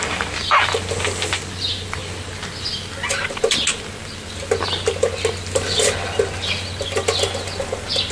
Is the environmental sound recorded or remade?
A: recorded